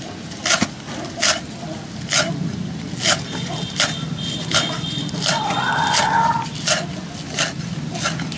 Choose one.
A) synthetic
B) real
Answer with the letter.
B